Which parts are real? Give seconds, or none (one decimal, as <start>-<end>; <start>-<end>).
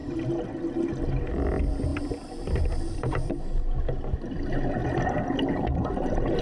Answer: 0.0-1.9; 3.3-4.8